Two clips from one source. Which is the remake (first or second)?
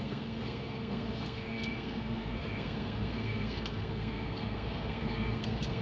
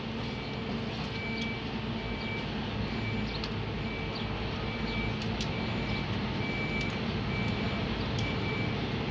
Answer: first